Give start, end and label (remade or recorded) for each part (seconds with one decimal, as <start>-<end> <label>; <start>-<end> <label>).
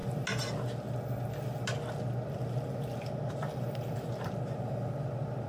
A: 0.0-3.3 recorded; 3.3-5.5 remade